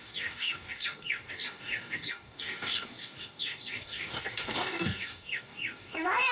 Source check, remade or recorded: remade